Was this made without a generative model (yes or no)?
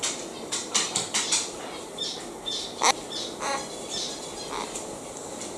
no